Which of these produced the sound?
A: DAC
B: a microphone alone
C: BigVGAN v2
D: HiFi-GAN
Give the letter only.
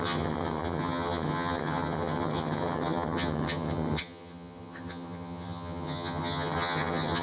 D